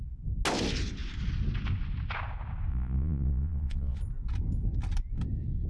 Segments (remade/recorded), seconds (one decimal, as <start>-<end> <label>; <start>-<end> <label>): 0.0-2.7 recorded; 2.7-4.0 remade; 4.0-5.7 recorded